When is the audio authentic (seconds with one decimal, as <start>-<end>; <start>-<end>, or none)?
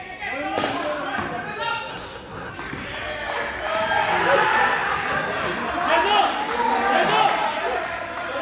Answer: 0.0-1.9; 2.5-8.4